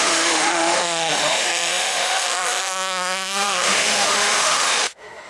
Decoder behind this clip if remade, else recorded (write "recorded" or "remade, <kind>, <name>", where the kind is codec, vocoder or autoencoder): remade, autoencoder, DAC-VAE